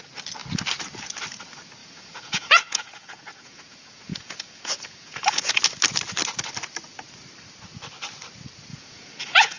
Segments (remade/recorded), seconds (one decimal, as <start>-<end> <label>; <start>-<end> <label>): 0.0-1.8 recorded; 1.8-5.6 remade; 5.6-8.7 recorded; 8.7-9.6 remade